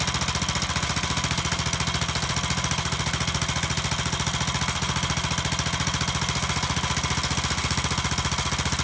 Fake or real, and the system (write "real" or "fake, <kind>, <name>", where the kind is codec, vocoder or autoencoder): real